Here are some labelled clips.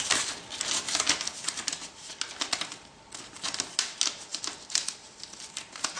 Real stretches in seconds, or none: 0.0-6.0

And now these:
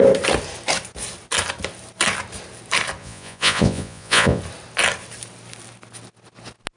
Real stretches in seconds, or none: 0.0-3.0; 4.4-6.8

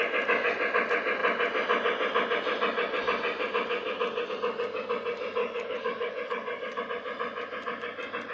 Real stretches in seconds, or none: 0.0-5.4; 6.8-8.3

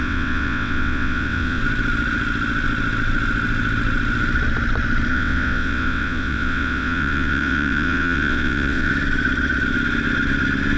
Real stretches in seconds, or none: 1.6-5.1; 8.9-10.8

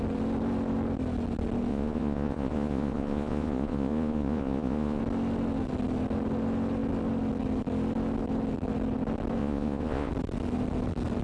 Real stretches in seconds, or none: 0.0-1.7; 5.0-9.4; 10.1-11.2

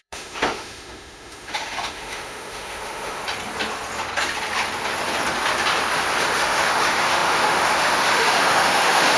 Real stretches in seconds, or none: 3.2-6.2

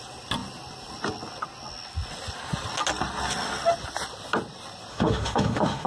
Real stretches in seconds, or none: 0.0-4.9